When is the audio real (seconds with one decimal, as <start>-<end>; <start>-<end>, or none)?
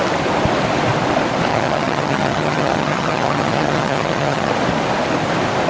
0.0-1.5; 4.5-5.7